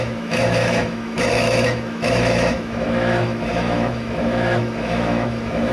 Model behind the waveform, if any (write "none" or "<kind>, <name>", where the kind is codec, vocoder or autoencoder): autoencoder, DAC-VAE